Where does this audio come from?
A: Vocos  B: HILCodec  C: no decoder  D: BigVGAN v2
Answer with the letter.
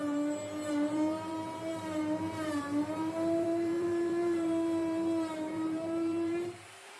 D